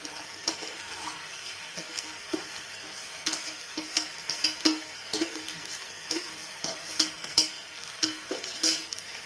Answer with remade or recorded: remade